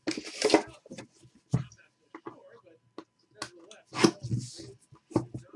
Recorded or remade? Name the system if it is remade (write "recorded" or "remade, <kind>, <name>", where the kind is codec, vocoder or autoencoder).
recorded